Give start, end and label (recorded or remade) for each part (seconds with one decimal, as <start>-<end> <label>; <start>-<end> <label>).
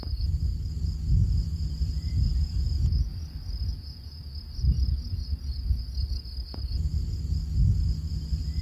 0.0-0.5 remade; 0.5-1.3 recorded; 1.3-3.1 remade; 3.1-3.7 recorded; 3.7-4.2 remade; 4.2-8.6 recorded